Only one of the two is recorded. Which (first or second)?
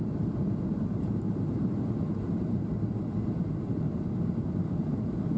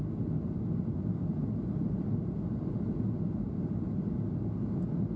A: second